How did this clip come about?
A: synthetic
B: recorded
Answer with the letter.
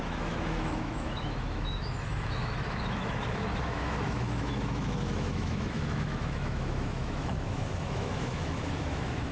A